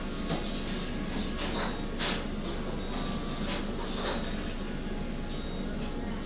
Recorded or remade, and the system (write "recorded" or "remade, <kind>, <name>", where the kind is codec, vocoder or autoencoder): recorded